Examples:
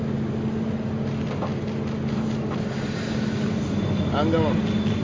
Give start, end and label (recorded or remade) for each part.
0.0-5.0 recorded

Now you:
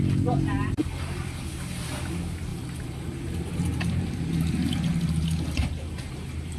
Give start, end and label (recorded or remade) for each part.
0.0-0.8 recorded; 0.8-2.1 remade; 2.1-2.5 recorded; 2.5-6.6 remade

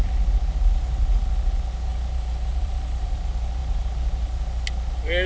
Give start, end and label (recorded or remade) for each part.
0.0-1.9 recorded; 1.9-3.1 remade; 3.1-5.3 recorded

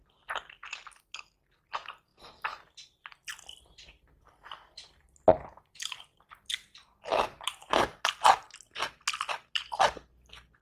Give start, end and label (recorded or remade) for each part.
0.0-2.1 recorded; 2.1-5.0 remade; 5.0-10.6 recorded